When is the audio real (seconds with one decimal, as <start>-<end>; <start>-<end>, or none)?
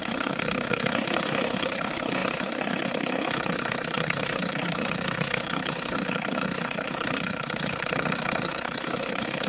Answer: none